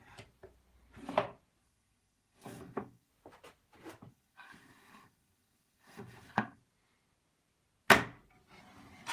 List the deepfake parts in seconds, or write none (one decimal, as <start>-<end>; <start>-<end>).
1.6-3.1; 4.1-6.6

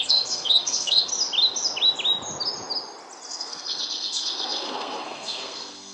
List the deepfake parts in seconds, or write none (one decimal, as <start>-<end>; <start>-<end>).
0.0-1.1; 3.3-5.9

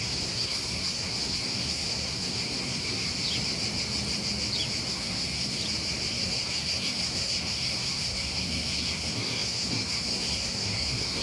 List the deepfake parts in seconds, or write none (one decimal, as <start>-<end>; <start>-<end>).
0.0-3.1; 4.9-5.6; 6.1-11.2

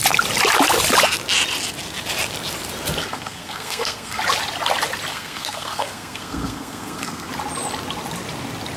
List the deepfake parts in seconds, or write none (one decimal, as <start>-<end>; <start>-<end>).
3.0-4.2; 5.1-7.3

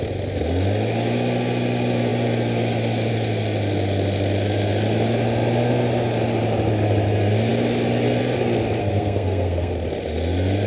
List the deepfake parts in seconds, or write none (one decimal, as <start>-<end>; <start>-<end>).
8.8-9.7

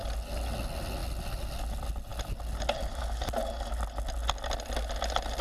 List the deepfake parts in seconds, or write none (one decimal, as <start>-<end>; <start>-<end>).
none